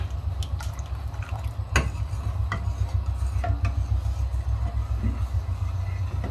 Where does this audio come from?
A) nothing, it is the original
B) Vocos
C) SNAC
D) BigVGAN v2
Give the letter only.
A